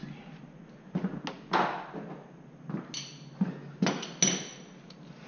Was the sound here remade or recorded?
recorded